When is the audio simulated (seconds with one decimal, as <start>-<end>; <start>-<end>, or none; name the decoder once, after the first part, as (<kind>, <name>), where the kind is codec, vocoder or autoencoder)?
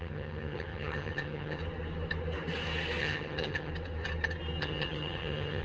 0.0-1.6 (vocoder, HiFi-GAN); 3.0-3.7; 4.6-5.6